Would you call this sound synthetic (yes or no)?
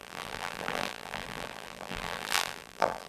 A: yes